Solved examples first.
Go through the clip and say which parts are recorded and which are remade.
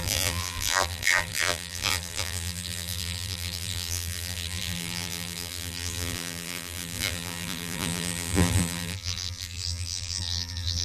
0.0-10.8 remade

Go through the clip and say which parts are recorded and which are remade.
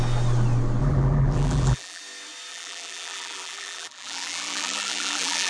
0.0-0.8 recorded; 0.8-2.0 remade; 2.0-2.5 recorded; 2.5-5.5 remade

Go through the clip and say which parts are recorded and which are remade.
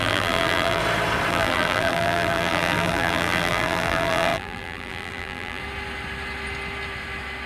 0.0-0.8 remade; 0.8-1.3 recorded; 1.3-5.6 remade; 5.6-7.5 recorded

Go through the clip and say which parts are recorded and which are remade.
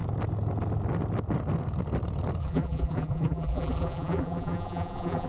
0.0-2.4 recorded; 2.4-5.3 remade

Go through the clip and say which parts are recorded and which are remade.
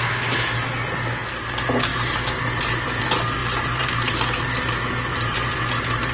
0.0-1.9 recorded; 1.9-3.0 remade; 3.0-3.4 recorded; 3.4-5.5 remade; 5.5-6.1 recorded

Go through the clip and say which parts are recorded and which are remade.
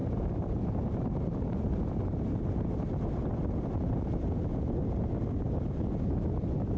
0.0-4.5 remade; 4.5-5.6 recorded; 5.6-6.8 remade